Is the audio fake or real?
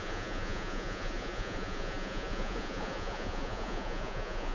fake